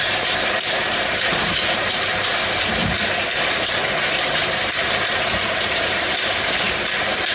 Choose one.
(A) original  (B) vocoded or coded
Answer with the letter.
B